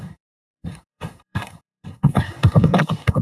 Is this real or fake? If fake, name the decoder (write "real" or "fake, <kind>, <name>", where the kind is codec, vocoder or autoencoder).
fake, codec, SNAC